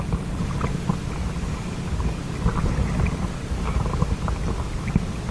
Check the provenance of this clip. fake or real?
real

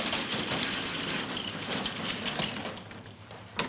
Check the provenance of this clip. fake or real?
real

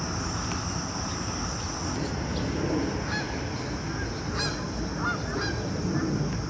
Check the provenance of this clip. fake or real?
real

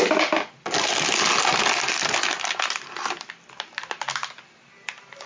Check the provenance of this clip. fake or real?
real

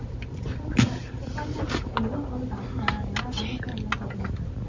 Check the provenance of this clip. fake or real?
real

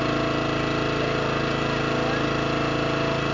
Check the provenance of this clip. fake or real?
real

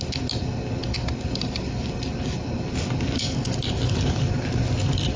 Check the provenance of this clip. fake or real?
real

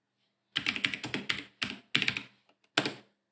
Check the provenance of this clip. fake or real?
real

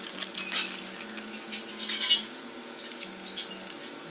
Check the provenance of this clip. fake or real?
real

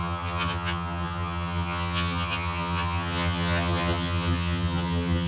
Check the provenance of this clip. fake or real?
fake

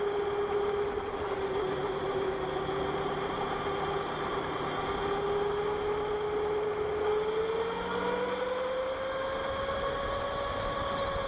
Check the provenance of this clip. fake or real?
real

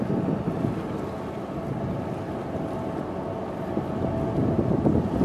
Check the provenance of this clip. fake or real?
real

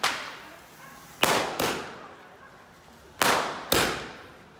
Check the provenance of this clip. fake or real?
real